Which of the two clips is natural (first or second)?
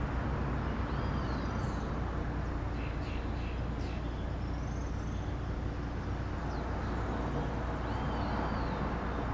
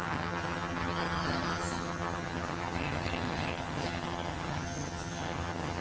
first